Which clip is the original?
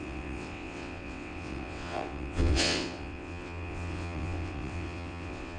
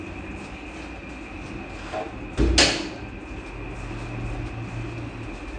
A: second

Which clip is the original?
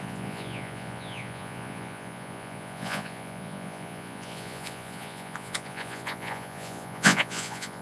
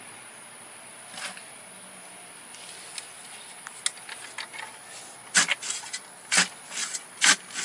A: second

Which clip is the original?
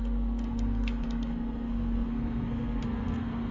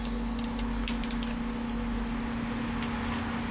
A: second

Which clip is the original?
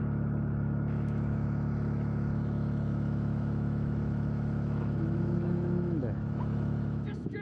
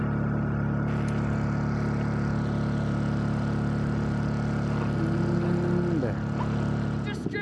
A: second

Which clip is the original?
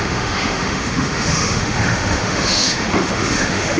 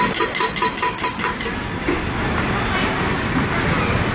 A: second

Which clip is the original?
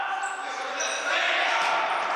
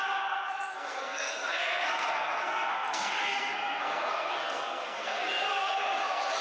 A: first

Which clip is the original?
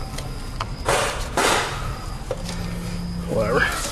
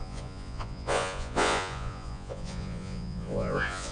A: first